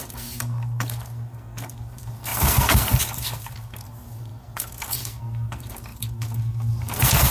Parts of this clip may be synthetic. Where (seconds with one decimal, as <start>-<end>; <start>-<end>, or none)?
0.0-7.3